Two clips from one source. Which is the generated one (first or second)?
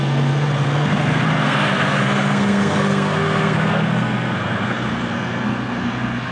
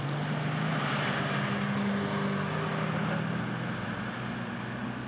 first